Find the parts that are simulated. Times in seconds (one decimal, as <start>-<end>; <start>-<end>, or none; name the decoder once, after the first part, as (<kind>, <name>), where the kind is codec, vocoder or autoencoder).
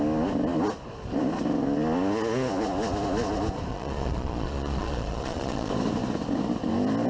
3.7-5.7 (vocoder, Vocos)